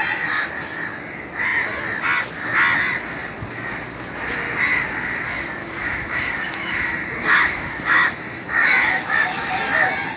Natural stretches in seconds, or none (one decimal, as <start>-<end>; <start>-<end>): 0.0-5.6; 9.5-10.2